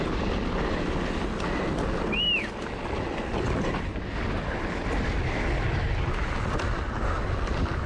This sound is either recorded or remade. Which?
recorded